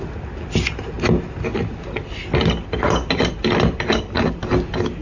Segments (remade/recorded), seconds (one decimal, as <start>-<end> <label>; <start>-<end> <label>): 0.0-5.0 recorded